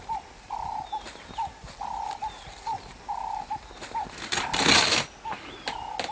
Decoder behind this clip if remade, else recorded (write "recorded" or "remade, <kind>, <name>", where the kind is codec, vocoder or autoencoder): recorded